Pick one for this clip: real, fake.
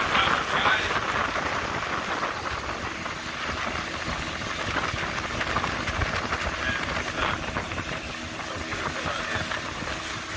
real